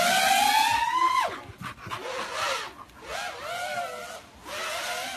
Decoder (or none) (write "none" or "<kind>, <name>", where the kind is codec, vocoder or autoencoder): none